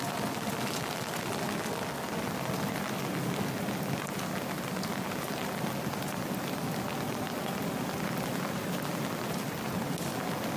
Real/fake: real